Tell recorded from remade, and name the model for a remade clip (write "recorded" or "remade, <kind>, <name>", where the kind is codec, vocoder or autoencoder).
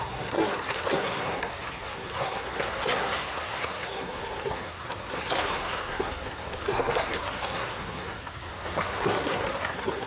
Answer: remade, codec, SNAC